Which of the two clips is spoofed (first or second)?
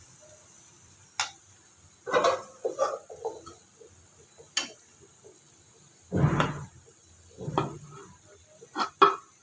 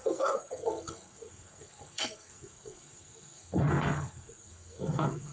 second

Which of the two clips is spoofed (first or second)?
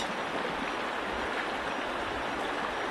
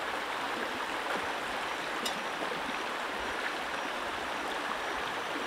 second